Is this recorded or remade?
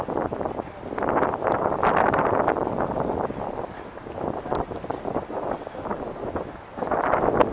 recorded